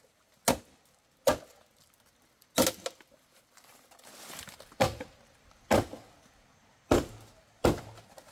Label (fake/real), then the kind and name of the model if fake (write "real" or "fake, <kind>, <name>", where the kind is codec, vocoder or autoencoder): real